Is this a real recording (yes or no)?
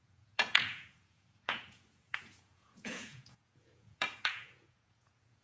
no